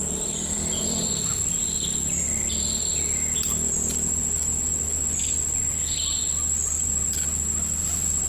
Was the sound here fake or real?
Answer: real